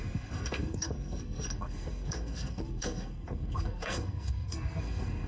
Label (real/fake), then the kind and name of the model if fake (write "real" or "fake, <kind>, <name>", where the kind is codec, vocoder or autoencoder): fake, codec, SNAC